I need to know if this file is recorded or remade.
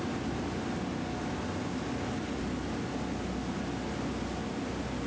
recorded